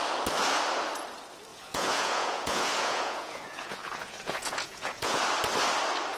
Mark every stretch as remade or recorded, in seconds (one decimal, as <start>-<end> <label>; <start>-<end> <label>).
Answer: 0.0-1.5 recorded; 1.5-5.2 remade; 5.2-6.2 recorded